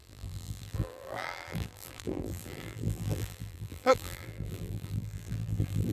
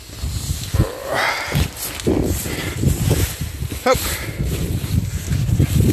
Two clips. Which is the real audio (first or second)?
second